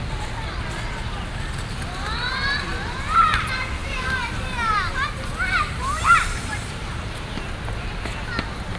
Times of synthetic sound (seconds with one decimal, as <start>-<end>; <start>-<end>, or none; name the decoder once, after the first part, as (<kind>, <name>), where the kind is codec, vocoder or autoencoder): 3.8-7.0 (vocoder, BigVGAN v2)